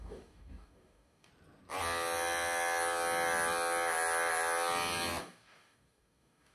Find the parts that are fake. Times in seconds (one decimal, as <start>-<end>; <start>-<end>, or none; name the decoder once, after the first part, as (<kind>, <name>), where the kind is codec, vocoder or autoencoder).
0.0-1.3 (codec, DAC); 5.2-6.5